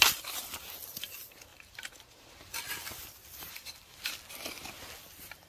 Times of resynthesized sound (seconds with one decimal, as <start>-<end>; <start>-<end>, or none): 1.5-2.5; 3.3-3.9